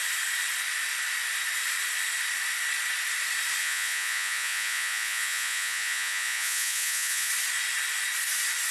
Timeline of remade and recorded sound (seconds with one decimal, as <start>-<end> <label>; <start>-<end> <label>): 0.0-3.6 recorded; 3.6-7.3 remade; 7.3-8.7 recorded